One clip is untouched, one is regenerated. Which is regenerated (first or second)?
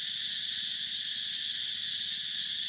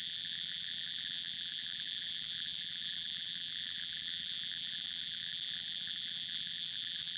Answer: second